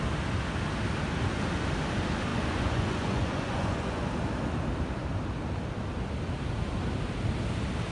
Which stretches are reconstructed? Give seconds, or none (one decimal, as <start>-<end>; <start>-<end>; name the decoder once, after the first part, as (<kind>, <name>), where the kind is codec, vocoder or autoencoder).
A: 2.3-4.1 (vocoder, Vocos)